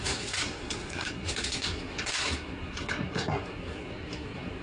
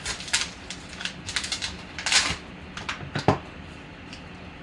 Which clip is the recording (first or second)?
second